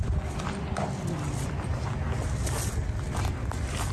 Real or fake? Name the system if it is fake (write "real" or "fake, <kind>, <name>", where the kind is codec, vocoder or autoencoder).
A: real